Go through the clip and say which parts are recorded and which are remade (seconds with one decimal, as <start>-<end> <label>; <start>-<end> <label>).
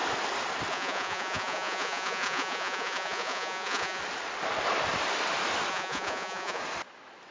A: 0.0-0.7 recorded; 0.7-4.0 remade; 4.0-5.7 recorded; 5.7-6.6 remade; 6.6-7.3 recorded